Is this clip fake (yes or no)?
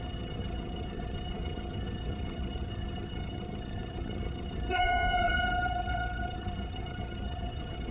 yes